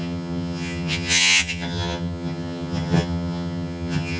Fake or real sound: fake